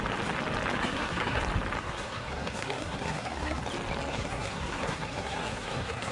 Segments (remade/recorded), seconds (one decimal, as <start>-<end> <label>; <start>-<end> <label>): 0.0-0.8 recorded; 0.8-1.4 remade; 1.4-1.8 recorded; 1.8-3.6 remade; 3.6-4.1 recorded; 4.1-6.1 remade